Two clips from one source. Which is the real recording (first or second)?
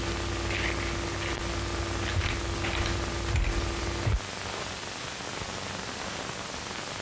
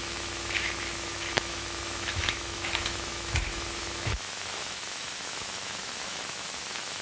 first